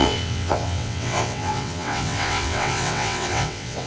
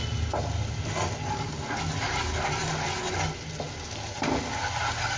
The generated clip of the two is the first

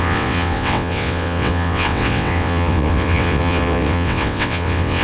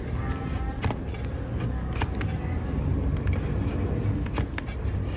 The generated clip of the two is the first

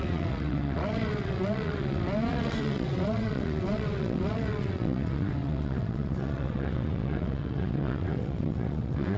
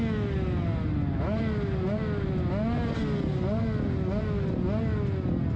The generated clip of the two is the first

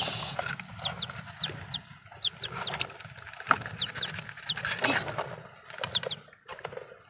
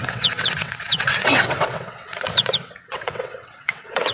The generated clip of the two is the second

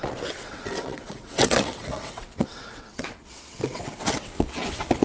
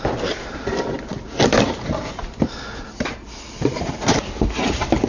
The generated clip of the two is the first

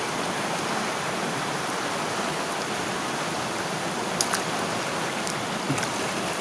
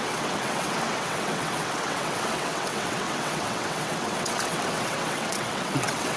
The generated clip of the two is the second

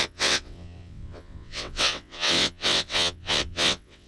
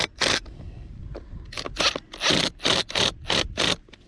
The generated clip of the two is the first